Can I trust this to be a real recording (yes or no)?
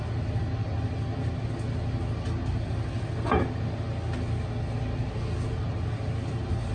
yes